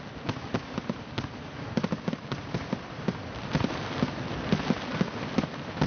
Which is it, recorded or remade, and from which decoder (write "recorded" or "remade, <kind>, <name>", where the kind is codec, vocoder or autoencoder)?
recorded